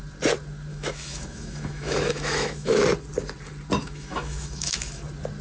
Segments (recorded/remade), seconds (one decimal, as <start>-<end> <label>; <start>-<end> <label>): 0.0-0.7 recorded; 0.7-2.8 remade; 2.8-3.8 recorded; 3.8-5.0 remade; 5.0-5.4 recorded